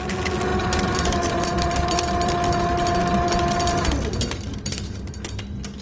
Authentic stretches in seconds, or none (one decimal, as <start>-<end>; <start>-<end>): 0.0-0.5; 2.3-5.8